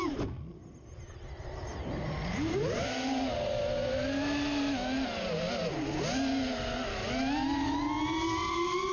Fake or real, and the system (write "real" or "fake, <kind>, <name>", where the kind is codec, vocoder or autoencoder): real